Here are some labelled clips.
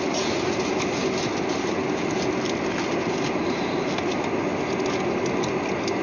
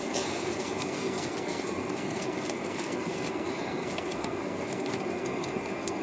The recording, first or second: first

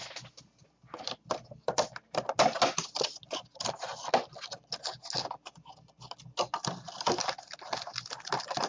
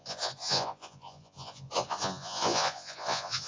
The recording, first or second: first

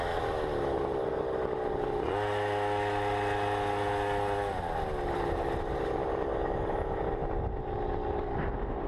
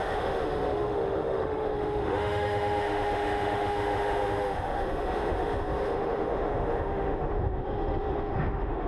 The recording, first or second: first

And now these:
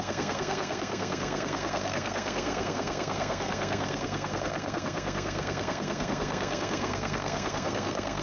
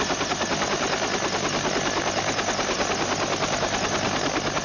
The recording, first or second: second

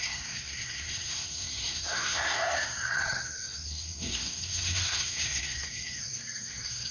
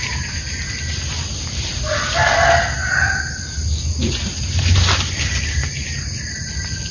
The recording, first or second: second